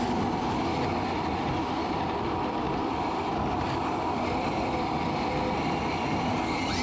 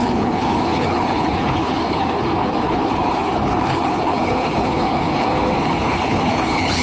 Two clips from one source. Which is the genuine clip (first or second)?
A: first